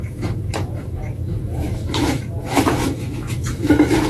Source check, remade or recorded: remade